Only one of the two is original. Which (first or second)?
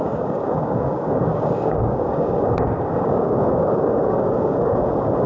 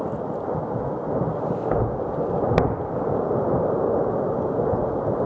second